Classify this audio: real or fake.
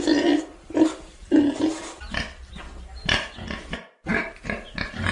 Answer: real